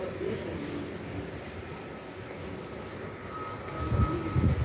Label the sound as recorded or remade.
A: recorded